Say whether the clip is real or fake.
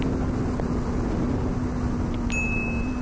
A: real